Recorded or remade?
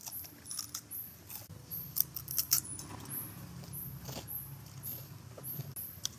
recorded